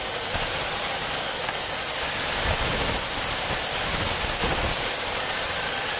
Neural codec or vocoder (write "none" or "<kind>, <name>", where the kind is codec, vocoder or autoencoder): vocoder, BigVGAN v2